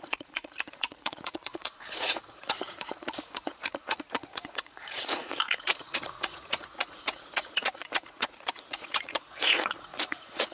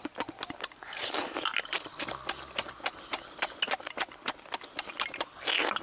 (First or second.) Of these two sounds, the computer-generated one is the first